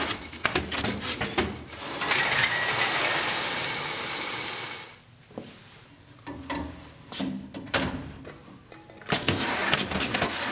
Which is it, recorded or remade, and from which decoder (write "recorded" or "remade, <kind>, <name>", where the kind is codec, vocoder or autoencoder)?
recorded